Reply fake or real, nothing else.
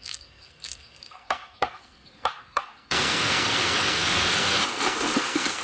fake